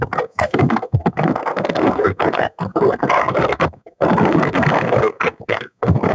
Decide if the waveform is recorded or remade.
remade